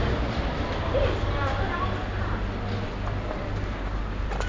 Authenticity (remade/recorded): recorded